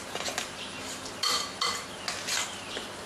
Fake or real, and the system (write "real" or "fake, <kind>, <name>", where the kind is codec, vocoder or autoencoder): real